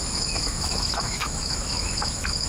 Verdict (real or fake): fake